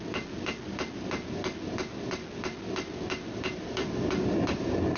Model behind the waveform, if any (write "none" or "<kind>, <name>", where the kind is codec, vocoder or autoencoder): none